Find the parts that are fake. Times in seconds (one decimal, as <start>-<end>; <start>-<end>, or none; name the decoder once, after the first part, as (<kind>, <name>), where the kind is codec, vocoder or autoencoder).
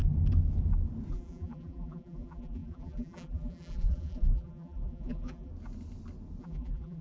1.1-5.5 (vocoder, BigVGAN v2); 6.4-7.0